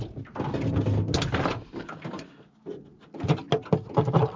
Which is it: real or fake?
real